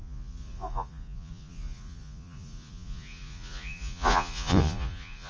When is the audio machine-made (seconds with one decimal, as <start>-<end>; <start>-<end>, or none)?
0.0-5.3